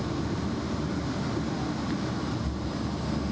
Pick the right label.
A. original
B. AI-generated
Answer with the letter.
A